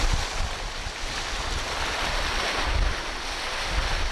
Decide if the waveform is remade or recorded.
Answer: recorded